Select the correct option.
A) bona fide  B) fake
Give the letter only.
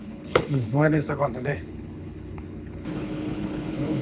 B